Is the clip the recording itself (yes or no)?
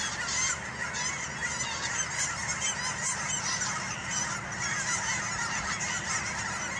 yes